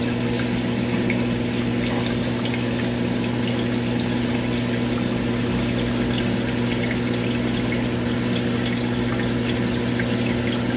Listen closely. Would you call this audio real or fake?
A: real